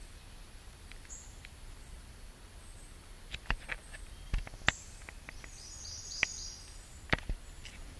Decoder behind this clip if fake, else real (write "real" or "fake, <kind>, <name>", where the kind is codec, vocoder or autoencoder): real